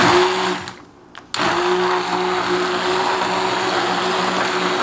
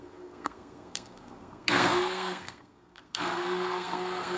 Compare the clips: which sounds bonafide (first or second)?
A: first